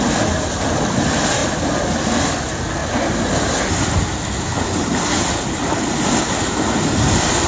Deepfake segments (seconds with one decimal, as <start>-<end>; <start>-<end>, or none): none